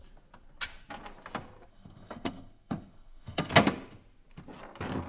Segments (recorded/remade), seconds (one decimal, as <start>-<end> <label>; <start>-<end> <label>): 0.0-1.7 recorded; 1.7-3.5 remade; 3.5-5.1 recorded